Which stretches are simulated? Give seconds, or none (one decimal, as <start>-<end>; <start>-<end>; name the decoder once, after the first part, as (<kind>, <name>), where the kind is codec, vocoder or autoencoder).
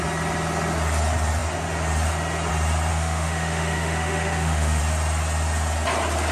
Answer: 2.9-4.8 (autoencoder, DAC-VAE)